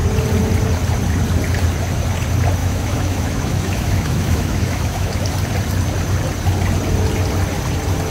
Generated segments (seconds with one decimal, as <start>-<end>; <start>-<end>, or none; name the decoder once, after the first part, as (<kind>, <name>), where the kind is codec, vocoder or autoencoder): 2.6-5.2 (autoencoder, DAC-VAE)